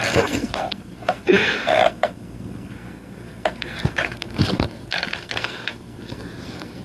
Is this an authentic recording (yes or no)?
no